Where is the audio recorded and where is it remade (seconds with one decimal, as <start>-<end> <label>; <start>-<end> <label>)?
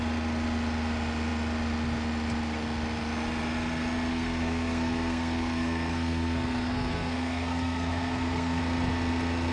0.0-4.1 recorded; 4.1-8.6 remade; 8.6-9.5 recorded